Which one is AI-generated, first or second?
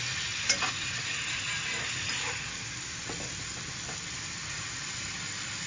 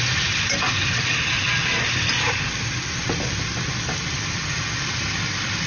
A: second